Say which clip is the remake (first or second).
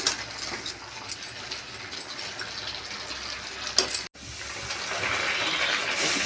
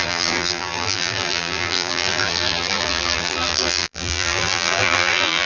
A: second